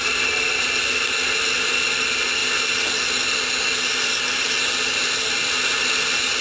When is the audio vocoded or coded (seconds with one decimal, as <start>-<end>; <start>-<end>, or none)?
none